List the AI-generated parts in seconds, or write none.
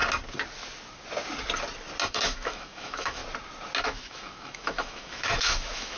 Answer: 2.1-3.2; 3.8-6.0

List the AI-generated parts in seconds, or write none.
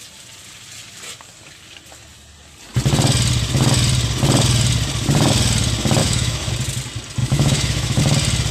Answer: 6.0-6.5; 7.2-8.0